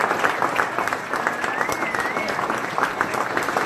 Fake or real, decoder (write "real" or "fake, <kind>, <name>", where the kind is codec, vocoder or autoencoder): real